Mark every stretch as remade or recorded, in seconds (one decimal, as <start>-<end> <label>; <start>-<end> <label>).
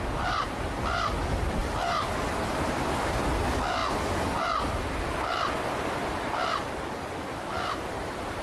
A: 0.0-8.4 recorded